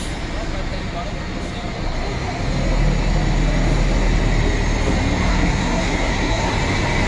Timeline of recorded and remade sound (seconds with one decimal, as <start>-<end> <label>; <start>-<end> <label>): 0.0-5.3 recorded; 5.3-6.5 remade; 6.5-7.1 recorded